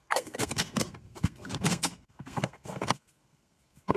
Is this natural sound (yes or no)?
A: no